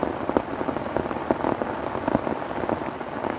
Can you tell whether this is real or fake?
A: real